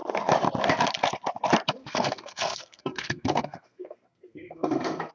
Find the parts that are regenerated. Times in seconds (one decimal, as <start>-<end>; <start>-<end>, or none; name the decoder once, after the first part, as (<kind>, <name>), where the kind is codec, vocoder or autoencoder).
1.8-5.1 (codec, SNAC)